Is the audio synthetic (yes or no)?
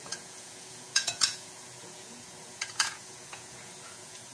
yes